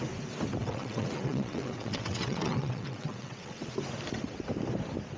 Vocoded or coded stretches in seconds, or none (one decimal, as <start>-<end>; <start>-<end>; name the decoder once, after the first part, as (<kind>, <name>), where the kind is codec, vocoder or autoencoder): 0.6-3.7 (vocoder, WaveNeXt)